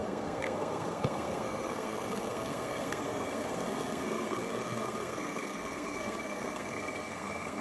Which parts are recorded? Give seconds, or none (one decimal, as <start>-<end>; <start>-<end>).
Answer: none